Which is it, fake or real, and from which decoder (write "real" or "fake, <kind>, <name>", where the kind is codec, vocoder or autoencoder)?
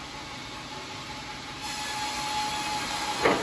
real